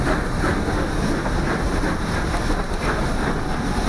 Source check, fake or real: real